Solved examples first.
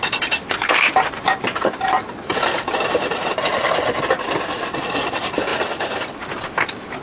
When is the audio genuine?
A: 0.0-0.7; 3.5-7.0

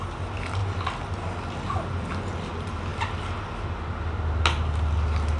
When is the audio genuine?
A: 0.0-5.4

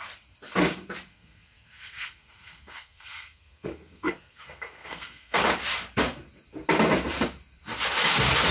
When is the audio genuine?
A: 0.0-1.1; 5.4-8.5